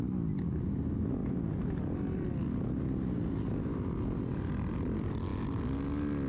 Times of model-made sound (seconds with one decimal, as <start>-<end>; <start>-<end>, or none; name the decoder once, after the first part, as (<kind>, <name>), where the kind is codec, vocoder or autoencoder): none